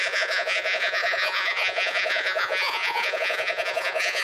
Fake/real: fake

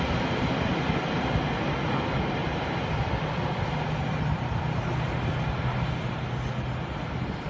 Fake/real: real